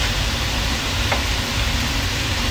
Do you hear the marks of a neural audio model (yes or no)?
no